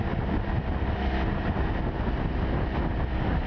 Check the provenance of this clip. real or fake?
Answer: real